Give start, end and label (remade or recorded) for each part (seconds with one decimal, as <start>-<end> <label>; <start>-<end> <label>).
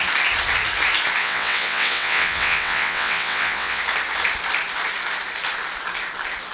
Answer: 0.0-1.2 recorded; 1.2-3.8 remade; 3.8-6.5 recorded